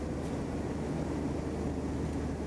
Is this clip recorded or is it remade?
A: recorded